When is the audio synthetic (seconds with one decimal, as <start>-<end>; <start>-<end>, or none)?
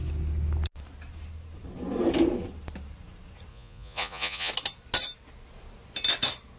3.5-4.5